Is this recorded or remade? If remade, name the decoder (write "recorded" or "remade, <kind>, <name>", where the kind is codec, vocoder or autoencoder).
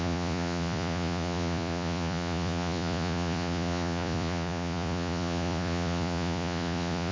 remade, vocoder, Vocos